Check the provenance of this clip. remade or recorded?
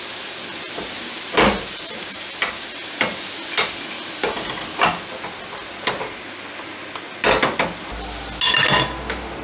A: recorded